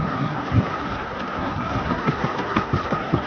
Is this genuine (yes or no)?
no